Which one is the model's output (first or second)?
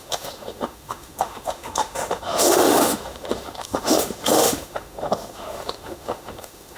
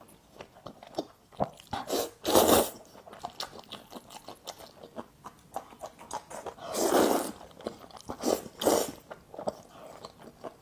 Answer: first